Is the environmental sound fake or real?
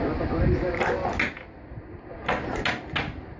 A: real